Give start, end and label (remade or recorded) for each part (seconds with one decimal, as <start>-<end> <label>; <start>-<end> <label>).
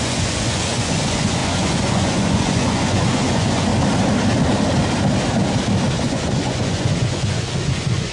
0.0-3.7 remade; 3.7-6.0 recorded; 6.0-8.1 remade